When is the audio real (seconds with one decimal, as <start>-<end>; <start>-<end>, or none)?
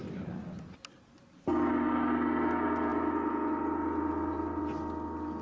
0.0-5.4